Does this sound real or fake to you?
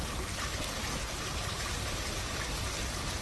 real